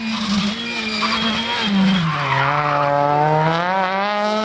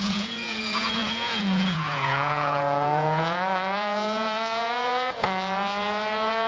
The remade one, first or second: second